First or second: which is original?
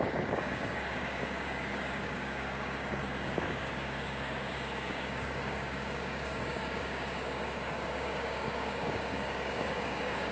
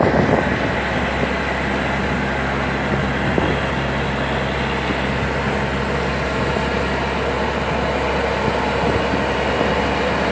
second